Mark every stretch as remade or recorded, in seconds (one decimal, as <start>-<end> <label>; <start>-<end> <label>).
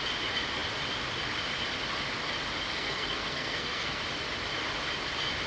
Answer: 0.0-2.7 recorded; 2.7-4.0 remade; 4.0-5.5 recorded